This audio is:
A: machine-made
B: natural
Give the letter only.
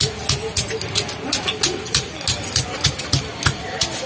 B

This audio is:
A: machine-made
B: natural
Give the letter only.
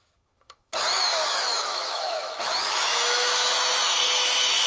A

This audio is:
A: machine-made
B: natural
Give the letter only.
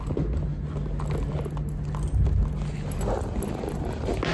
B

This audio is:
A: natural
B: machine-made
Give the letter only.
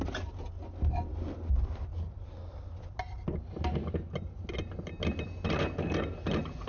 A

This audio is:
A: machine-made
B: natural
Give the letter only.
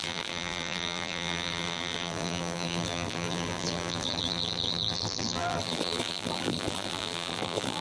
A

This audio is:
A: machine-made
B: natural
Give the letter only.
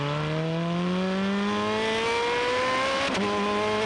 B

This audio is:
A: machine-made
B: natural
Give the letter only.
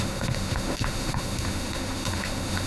A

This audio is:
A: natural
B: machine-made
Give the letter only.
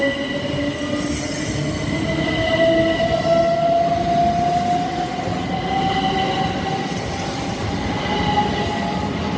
A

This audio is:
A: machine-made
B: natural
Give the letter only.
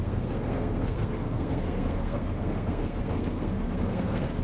A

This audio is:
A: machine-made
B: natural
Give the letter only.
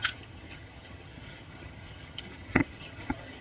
A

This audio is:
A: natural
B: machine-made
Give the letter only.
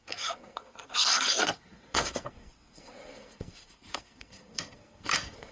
B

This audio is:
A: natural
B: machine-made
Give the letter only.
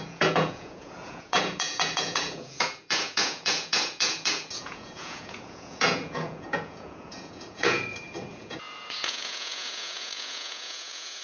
B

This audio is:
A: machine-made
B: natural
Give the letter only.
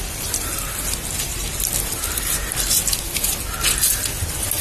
B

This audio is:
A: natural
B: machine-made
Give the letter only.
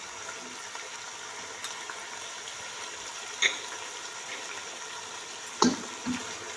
A